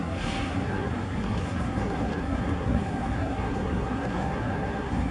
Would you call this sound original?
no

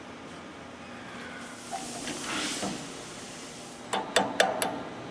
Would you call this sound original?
yes